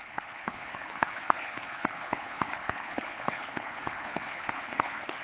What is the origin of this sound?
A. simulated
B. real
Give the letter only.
A